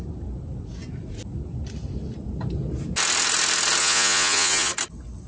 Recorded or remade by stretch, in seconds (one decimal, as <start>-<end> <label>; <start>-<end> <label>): 0.0-3.8 recorded; 3.8-4.7 remade; 4.7-5.3 recorded